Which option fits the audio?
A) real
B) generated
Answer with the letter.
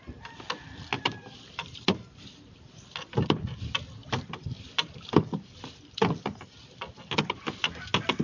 A